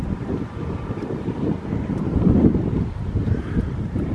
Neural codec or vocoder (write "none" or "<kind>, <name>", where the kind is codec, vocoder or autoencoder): vocoder, BigVGAN v2